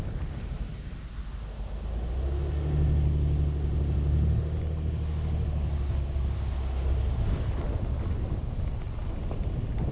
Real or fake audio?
real